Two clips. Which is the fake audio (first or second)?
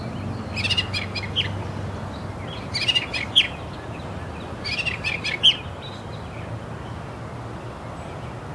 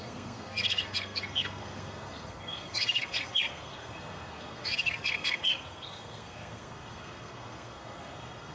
second